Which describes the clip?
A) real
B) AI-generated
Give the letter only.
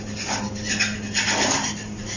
A